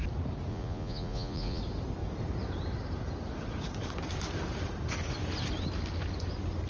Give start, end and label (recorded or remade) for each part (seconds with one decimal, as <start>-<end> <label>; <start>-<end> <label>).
0.0-0.5 recorded; 0.5-1.6 remade; 1.6-6.7 recorded